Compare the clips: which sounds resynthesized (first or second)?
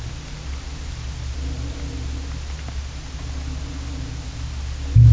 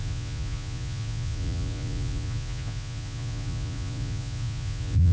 second